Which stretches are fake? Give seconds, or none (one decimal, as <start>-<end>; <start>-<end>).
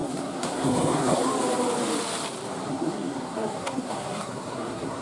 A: 0.0-1.3; 2.7-5.0